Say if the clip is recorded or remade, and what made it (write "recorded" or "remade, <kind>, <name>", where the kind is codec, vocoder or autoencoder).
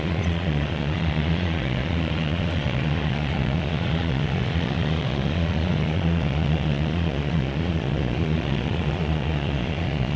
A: remade, vocoder, Vocos